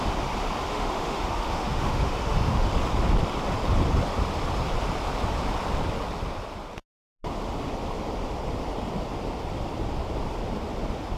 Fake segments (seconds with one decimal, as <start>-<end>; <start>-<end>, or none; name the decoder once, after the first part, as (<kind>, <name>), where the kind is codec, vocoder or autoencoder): 0.7-2.7 (autoencoder, DAC-VAE)